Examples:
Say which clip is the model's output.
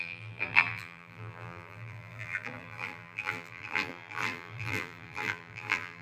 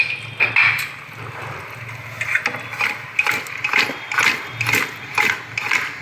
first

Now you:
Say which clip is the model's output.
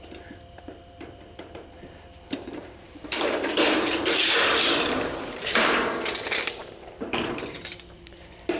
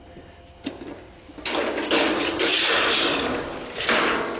first